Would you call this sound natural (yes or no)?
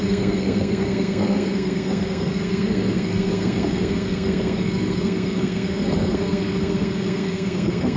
no